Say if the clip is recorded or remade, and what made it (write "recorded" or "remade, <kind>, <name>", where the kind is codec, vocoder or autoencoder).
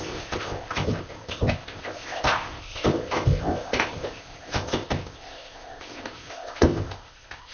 remade, codec, ZipCodec